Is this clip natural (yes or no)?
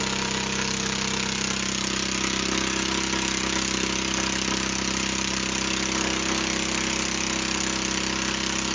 yes